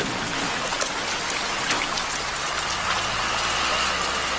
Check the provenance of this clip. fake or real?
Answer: real